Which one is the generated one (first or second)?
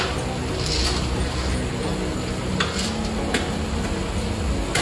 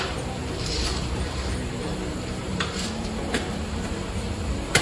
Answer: second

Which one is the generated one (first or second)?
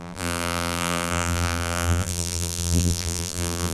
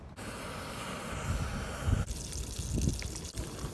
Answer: first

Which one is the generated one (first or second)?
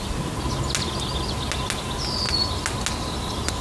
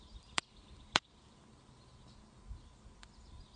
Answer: second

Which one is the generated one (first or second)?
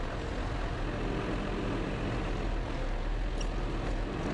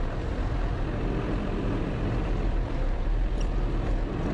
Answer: second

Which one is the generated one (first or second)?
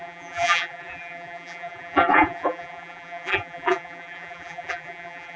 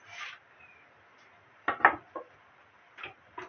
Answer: first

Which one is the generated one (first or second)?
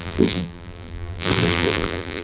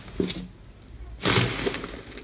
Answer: first